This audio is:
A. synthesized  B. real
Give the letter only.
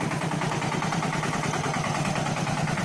B